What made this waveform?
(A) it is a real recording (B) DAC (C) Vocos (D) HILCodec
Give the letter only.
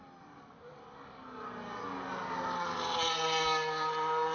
A